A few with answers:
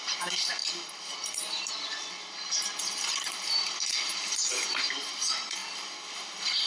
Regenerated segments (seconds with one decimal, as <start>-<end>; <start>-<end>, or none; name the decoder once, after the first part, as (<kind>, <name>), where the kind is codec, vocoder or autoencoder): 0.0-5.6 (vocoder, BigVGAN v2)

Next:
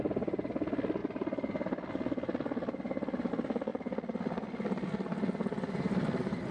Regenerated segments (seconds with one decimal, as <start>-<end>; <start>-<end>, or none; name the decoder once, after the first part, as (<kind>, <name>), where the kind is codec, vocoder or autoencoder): 3.7-6.5 (vocoder, BigVGAN v2)

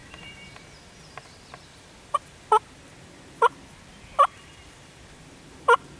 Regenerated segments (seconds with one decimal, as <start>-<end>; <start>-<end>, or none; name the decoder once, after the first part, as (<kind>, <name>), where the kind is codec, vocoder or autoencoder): 0.0-6.0 (vocoder, BigVGAN v2)

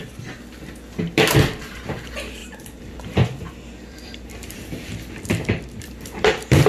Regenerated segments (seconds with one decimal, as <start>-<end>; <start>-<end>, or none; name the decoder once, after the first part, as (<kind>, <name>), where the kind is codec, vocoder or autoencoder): 2.4-6.7 (vocoder, BigVGAN v2)

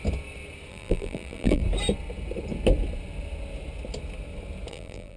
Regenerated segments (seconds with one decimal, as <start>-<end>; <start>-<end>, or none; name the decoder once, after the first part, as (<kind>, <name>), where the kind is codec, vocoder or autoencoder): 0.7-1.6 (vocoder, BigVGAN v2); 4.7-5.2

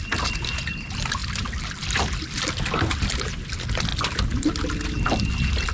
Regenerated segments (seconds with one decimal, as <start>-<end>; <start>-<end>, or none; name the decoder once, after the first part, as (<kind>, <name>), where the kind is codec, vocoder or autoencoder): 3.9-4.5 (vocoder, BigVGAN v2)

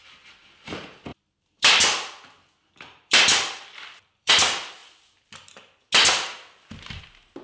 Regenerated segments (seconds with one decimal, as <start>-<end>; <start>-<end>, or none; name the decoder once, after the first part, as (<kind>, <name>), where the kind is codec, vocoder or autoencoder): 1.1-4.3 (vocoder, BigVGAN v2)